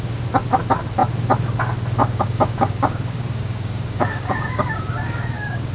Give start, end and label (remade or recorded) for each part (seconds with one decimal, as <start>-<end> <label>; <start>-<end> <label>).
0.0-2.0 recorded; 2.0-5.7 remade